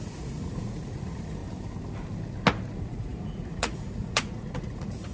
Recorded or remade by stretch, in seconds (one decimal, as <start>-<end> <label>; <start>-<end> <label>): 0.0-1.4 remade; 1.4-2.8 recorded; 2.8-5.1 remade